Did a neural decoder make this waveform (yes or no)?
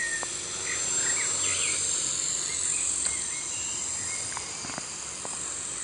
no